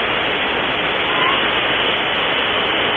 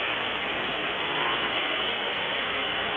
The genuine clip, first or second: first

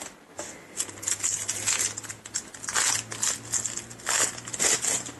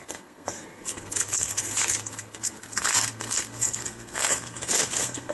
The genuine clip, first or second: first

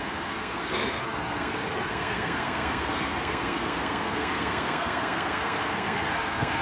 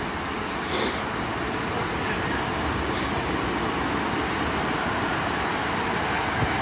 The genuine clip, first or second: second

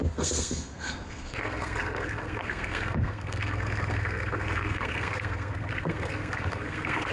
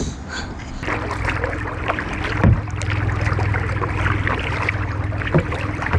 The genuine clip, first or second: second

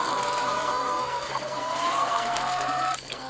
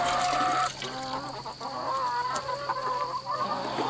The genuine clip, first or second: second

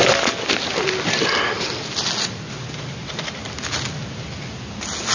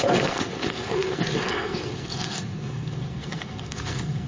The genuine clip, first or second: first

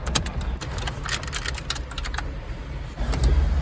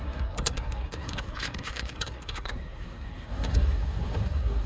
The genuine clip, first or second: first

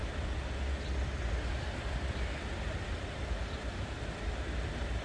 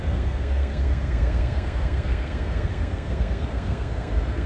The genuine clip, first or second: first